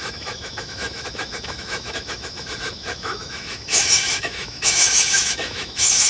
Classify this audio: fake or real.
fake